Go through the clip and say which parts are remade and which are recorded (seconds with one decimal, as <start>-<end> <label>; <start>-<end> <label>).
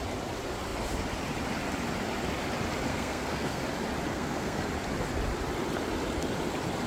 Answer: 0.0-2.9 recorded; 2.9-3.6 remade; 3.6-4.1 recorded; 4.1-4.6 remade; 4.6-6.9 recorded